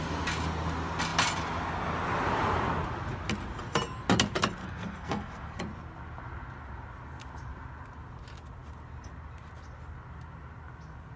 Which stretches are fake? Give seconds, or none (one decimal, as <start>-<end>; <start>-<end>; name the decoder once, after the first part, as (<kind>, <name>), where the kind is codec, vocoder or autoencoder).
4.6-5.6 (codec, SNAC)